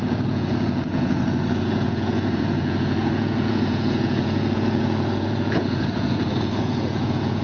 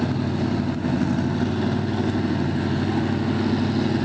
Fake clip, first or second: first